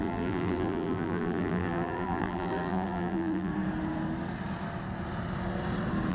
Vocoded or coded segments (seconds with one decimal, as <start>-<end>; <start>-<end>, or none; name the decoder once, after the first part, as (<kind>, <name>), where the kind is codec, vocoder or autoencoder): 0.0-3.5 (vocoder, BigVGAN v2)